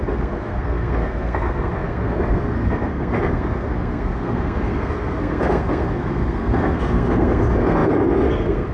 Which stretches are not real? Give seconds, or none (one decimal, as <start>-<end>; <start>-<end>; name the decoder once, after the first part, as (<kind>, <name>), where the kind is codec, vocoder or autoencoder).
0.0-8.7 (codec, SNAC)